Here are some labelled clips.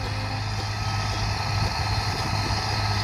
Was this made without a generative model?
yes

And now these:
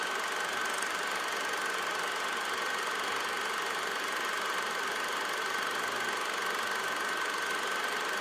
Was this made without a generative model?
yes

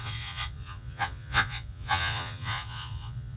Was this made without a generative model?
no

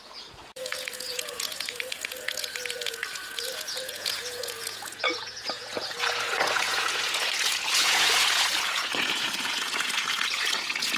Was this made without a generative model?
no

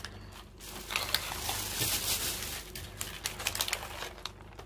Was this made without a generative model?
yes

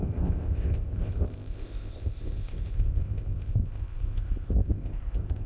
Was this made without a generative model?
no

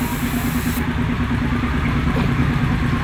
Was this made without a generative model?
yes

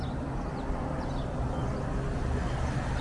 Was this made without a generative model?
yes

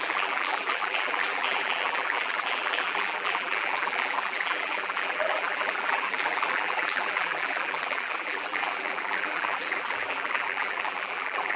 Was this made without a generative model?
no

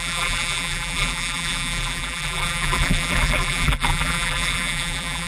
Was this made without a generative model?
no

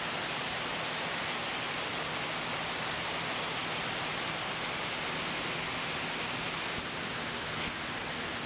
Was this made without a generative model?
yes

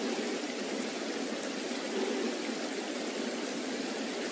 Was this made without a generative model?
yes